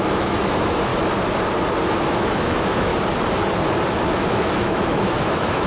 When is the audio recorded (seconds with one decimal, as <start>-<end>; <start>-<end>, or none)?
0.9-1.8; 2.9-4.3

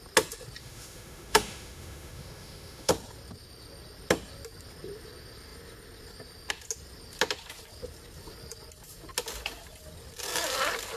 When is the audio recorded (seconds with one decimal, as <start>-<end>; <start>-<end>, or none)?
0.0-0.6; 2.9-11.0

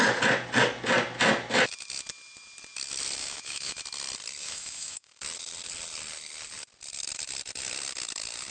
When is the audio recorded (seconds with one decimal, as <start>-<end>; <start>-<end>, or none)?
0.0-3.2; 3.8-4.4; 5.2-8.5

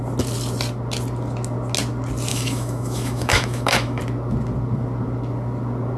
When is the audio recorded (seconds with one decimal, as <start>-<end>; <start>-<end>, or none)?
0.0-2.3; 4.0-6.0

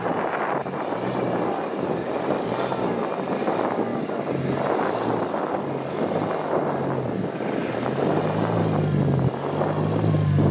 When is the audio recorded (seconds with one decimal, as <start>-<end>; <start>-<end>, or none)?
0.0-10.5

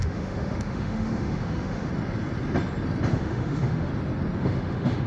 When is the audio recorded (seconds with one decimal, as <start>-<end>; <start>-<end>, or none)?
1.9-3.1; 3.9-4.4

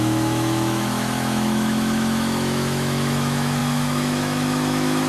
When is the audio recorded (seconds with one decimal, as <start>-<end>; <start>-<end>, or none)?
none